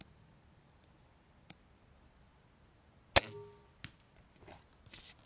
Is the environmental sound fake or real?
real